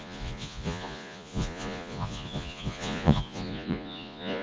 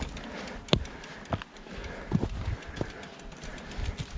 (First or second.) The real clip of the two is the second